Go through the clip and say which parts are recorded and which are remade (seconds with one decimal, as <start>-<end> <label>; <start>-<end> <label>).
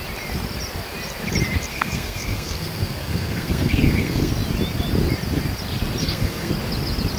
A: 0.0-1.7 recorded; 1.7-4.3 remade; 4.3-6.0 recorded; 6.0-6.5 remade; 6.5-7.2 recorded